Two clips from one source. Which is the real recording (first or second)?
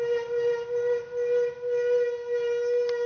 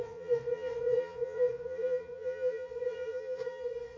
first